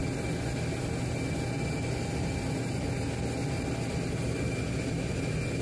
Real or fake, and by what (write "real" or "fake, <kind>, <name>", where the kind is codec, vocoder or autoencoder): real